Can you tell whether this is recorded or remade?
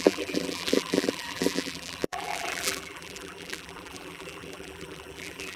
remade